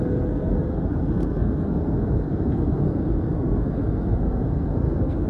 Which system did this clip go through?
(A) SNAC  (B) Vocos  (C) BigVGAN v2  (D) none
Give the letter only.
A